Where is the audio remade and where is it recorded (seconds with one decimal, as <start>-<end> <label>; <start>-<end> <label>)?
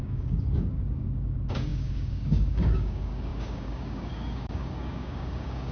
0.0-5.7 remade